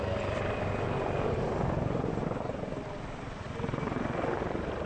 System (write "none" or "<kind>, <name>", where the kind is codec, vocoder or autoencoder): none